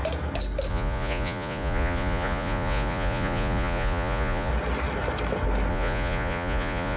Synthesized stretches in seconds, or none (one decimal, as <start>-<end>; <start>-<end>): 0.7-4.5; 5.7-7.0